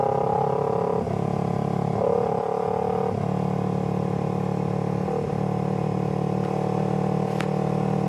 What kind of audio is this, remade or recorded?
recorded